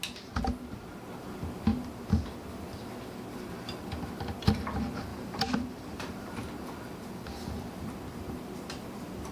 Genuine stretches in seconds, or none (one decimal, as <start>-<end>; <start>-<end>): 0.0-5.1; 6.3-9.3